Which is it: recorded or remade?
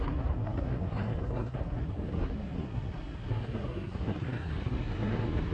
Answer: remade